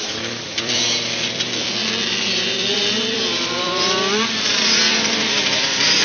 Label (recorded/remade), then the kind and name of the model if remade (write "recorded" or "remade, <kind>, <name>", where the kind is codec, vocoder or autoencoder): remade, vocoder, BigVGAN v2